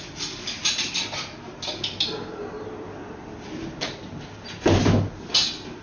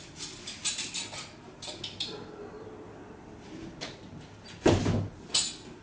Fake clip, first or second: second